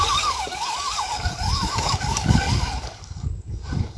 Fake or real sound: fake